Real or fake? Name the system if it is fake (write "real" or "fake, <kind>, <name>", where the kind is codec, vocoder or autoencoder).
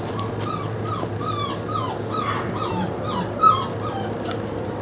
real